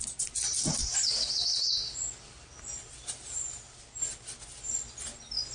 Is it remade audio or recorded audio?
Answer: recorded